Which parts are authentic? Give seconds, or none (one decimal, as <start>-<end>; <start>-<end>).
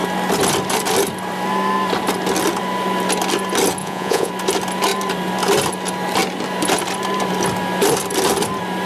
0.0-3.8; 4.3-8.9